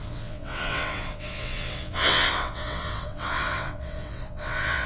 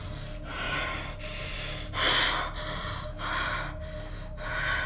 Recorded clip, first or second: second